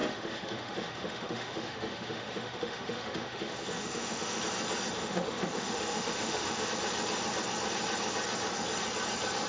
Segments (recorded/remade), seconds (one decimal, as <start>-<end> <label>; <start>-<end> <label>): 0.0-4.4 remade; 4.4-5.0 recorded; 5.0-6.7 remade; 6.7-9.5 recorded